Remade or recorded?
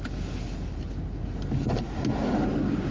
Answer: recorded